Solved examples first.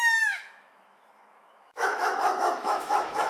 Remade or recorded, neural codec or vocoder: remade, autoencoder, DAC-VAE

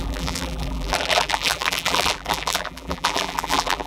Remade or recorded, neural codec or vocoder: remade, vocoder, BigVGAN v2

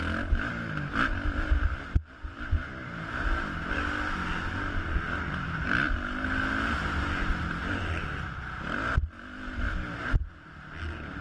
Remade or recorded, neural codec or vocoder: recorded